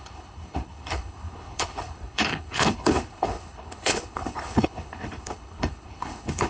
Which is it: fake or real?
fake